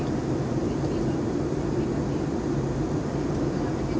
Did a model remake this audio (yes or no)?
no